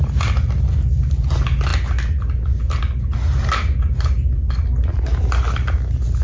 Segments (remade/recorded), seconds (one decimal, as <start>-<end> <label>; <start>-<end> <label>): 0.0-6.2 recorded